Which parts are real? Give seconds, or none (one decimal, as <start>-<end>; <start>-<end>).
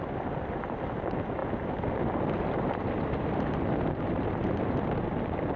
0.0-5.6